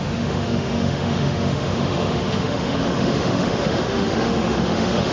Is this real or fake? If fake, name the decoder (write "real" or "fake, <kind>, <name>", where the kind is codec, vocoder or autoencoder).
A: fake, autoencoder, DAC-VAE